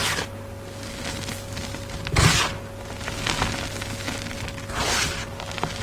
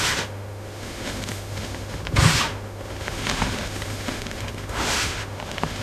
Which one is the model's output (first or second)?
second